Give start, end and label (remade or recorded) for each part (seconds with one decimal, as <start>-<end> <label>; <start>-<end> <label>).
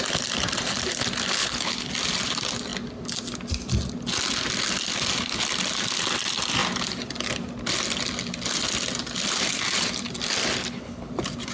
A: 0.0-1.4 recorded; 1.4-1.9 remade; 1.9-10.6 recorded; 10.6-11.1 remade; 11.1-11.5 recorded